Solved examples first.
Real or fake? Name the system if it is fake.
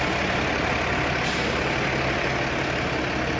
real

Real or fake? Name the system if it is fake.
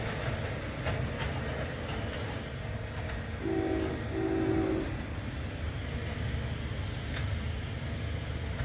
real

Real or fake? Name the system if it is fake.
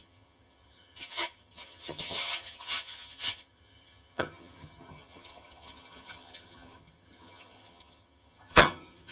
fake, vocoder, HiFi-GAN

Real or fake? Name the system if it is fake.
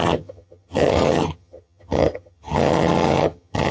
fake, vocoder, HiFi-GAN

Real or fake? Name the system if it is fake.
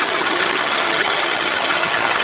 fake, vocoder, HiFi-GAN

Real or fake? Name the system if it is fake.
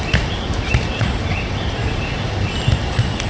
real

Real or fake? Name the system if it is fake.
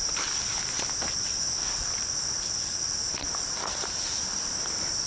real